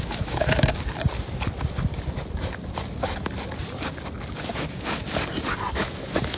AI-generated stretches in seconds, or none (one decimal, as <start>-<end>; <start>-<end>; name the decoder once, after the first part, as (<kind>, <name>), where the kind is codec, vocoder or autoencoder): 0.0-0.7 (autoencoder, DAC-VAE); 4.5-5.0; 5.8-6.4